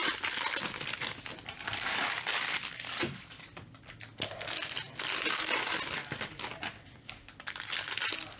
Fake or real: real